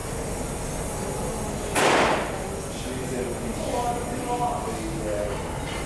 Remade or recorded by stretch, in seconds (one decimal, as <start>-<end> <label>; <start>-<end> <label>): 0.0-5.9 recorded